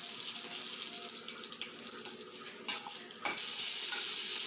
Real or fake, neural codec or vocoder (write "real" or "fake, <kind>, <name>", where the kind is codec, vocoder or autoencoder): real